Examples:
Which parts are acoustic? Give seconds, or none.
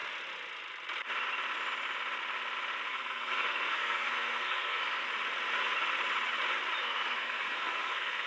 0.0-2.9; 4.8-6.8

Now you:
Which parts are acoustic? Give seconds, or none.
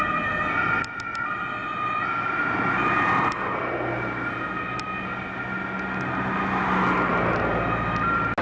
0.0-8.4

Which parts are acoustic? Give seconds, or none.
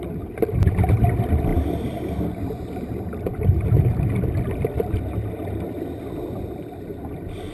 0.0-7.5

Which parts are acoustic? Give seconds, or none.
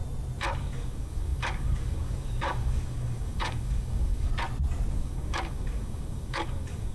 0.0-0.6; 4.3-4.9